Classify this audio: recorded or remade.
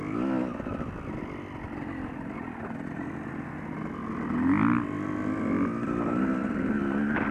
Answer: recorded